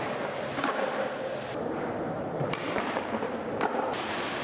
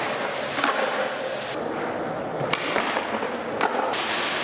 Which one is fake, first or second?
first